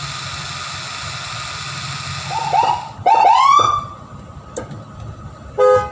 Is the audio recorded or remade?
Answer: recorded